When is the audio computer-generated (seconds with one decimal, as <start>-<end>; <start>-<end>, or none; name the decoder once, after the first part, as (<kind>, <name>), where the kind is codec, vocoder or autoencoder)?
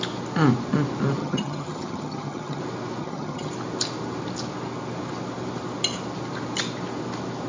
1.2-2.6 (vocoder, HiFi-GAN); 3.0-3.5